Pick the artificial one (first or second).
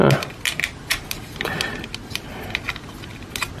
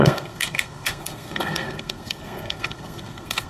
second